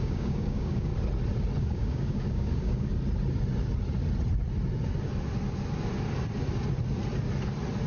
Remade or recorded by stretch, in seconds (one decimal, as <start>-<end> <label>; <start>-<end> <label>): 0.0-0.9 remade; 0.9-1.6 recorded; 1.6-2.9 remade; 2.9-7.9 recorded